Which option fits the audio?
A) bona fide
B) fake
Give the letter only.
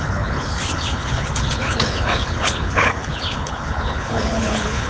B